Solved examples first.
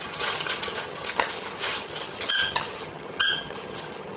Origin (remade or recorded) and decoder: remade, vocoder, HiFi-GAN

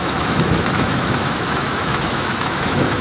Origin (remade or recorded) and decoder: remade, autoencoder, DAC-VAE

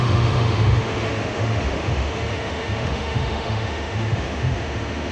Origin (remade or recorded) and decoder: remade, autoencoder, DAC-VAE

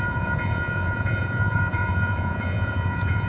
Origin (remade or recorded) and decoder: remade, vocoder, Vocos